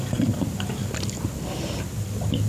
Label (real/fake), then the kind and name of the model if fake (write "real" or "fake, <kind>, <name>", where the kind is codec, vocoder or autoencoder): fake, vocoder, BigVGAN v2